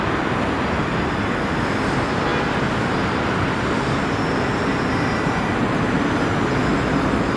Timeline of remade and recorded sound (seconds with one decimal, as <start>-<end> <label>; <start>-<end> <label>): 0.0-7.4 recorded